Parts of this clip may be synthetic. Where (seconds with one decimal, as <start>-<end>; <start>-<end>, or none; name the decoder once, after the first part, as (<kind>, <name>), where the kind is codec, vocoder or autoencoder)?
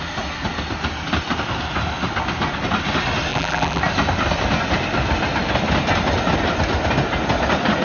3.3-3.8 (vocoder, BigVGAN v2)